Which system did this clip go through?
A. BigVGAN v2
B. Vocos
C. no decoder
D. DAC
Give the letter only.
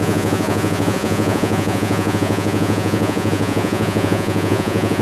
B